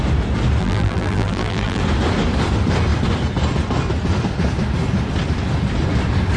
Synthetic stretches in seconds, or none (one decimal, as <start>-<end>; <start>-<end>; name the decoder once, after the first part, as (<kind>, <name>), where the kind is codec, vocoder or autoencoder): 0.6-1.8 (vocoder, BigVGAN v2)